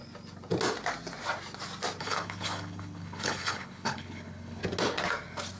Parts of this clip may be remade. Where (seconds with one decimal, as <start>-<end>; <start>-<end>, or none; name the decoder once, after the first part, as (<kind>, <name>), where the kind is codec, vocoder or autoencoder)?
2.0-4.6 (codec, HILCodec)